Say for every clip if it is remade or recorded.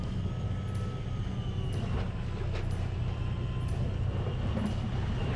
recorded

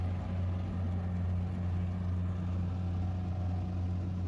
recorded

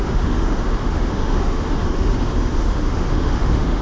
remade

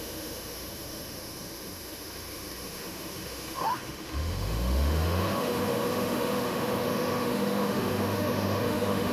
remade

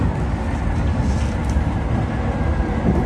recorded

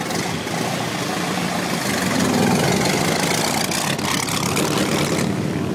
recorded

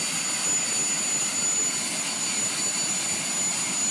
recorded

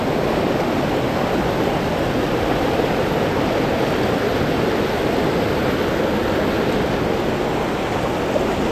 recorded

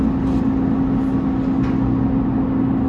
recorded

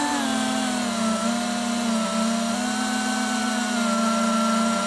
recorded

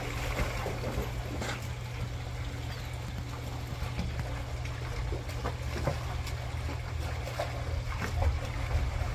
recorded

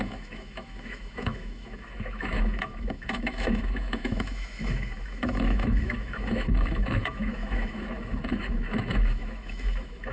remade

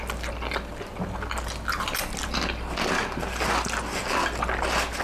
recorded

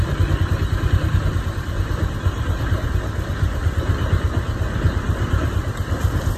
recorded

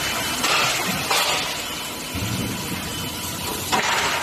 recorded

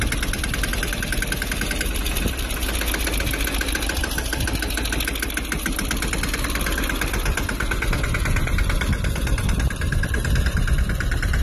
recorded